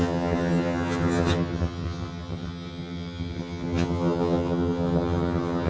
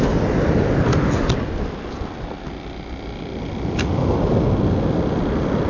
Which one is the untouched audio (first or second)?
second